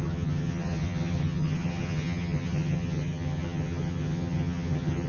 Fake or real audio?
fake